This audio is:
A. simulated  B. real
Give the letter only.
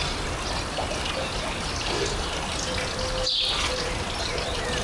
B